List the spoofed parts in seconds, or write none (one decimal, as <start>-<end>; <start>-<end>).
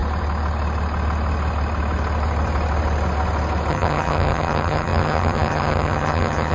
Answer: 3.7-6.5